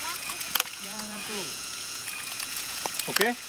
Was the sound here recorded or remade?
remade